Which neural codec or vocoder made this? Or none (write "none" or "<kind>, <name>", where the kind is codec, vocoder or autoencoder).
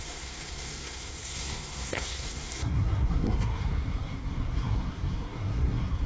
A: codec, SNAC